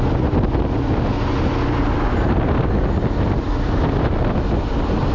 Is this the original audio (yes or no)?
yes